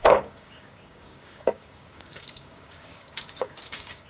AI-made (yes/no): yes